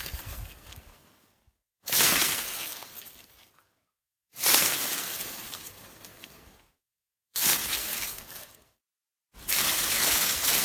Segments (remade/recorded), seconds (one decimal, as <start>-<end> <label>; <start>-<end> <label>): 0.0-8.8 remade; 8.8-9.5 recorded; 9.5-10.6 remade